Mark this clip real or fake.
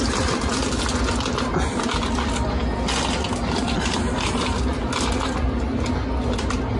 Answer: real